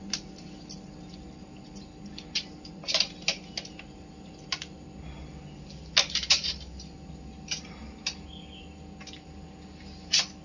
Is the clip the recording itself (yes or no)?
yes